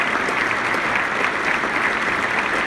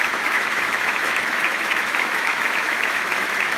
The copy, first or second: second